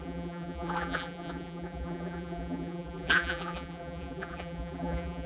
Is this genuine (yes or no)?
no